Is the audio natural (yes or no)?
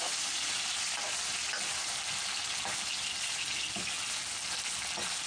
yes